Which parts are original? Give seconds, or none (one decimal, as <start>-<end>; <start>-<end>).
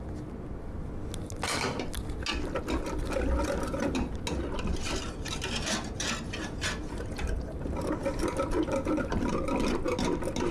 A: 0.0-6.4; 7.9-10.5